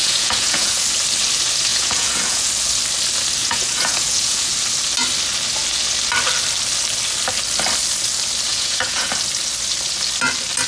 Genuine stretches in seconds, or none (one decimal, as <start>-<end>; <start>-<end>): 0.8-1.7; 2.5-3.4; 4.5-8.5; 9.1-10.7